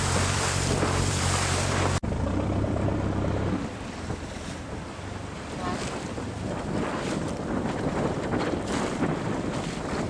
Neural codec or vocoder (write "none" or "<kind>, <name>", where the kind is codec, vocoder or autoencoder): vocoder, BigVGAN v2